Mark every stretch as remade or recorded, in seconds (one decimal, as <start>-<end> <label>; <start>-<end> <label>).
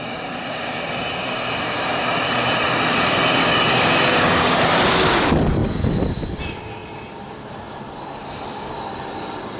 0.0-3.4 recorded; 3.4-4.6 remade; 4.6-8.2 recorded; 8.2-8.7 remade; 8.7-9.6 recorded